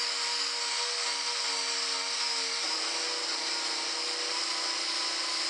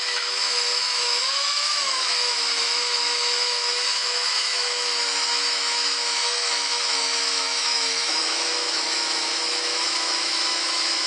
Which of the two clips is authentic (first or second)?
first